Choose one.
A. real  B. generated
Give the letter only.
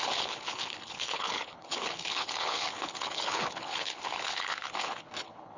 B